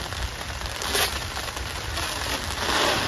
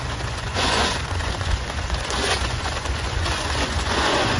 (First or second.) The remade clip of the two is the second